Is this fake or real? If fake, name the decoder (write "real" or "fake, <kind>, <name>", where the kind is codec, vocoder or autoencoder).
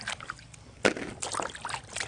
fake, vocoder, BigVGAN v2